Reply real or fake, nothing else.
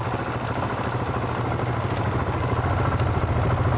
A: real